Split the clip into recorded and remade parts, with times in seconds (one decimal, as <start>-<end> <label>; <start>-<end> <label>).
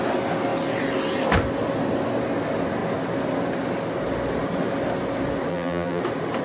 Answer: 0.0-5.5 recorded; 5.5-6.0 remade; 6.0-6.4 recorded